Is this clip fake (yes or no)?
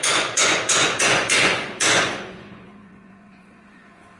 yes